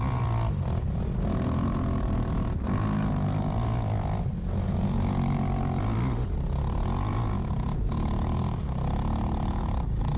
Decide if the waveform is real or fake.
real